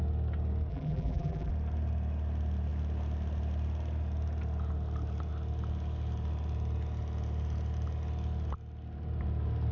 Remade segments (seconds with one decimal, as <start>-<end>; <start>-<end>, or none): 0.7-1.5